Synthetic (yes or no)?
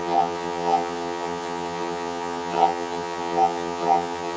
yes